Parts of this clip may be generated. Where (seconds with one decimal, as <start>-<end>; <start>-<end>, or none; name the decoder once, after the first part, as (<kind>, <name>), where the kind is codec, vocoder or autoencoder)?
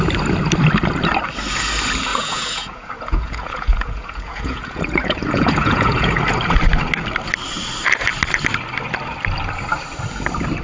2.1-6.2 (vocoder, Vocos)